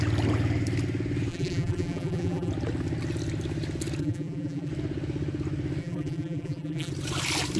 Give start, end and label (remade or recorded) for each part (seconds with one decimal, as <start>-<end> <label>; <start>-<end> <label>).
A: 0.0-1.3 recorded; 1.3-2.5 remade; 2.5-4.0 recorded; 4.0-4.7 remade; 4.7-5.8 recorded; 5.8-6.9 remade; 6.9-7.6 recorded